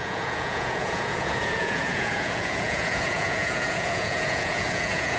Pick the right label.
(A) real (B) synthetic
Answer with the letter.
B